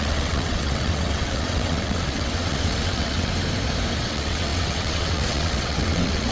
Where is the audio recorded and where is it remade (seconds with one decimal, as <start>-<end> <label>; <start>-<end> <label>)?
0.0-3.3 remade; 3.3-4.0 recorded; 4.0-6.3 remade